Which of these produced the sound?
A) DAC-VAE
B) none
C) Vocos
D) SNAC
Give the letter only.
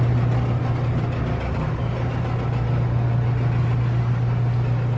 B